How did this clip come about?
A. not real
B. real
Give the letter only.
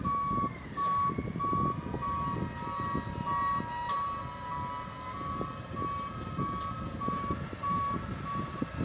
B